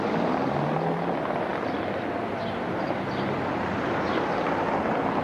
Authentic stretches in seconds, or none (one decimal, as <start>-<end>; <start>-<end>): 0.0-5.2

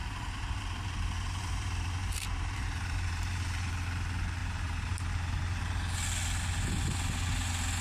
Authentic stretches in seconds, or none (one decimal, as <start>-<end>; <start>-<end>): 3.7-4.4; 5.6-7.8

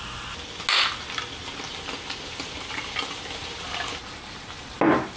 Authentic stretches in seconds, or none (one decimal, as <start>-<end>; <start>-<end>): 0.0-1.7; 4.7-5.2

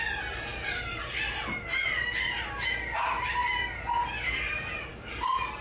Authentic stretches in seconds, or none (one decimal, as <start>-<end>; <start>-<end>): 0.0-5.6

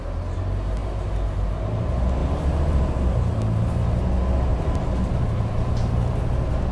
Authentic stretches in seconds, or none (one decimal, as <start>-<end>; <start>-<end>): 0.0-2.2; 3.0-4.5; 6.2-6.7